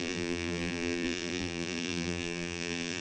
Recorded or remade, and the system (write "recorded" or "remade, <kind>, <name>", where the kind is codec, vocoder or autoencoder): remade, vocoder, BigVGAN v2